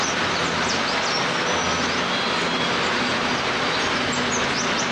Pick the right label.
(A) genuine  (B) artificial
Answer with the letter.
A